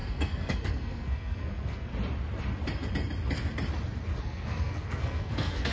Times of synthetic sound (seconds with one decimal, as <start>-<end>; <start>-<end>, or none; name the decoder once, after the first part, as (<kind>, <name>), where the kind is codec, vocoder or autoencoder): 0.0-1.9 (codec, SNAC); 4.2-5.7